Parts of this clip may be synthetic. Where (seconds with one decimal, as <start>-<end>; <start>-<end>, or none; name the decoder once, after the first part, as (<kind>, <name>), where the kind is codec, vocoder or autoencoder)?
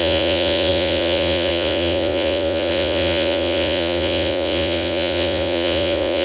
0.0-6.2 (vocoder, Vocos)